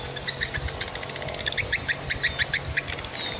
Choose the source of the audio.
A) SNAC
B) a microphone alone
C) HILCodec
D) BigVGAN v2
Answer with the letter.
B